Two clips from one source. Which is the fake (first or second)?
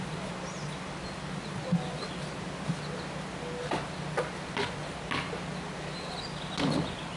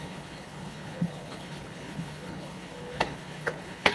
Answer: second